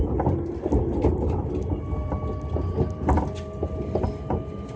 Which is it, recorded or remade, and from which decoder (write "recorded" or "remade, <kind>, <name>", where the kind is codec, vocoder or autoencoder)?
recorded